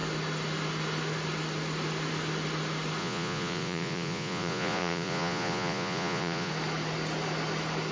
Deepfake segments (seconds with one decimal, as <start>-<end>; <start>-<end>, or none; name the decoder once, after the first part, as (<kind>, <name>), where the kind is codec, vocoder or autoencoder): 3.0-6.5 (vocoder, Vocos)